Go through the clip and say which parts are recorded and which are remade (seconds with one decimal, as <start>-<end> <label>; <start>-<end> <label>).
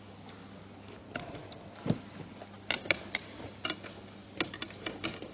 0.0-5.3 recorded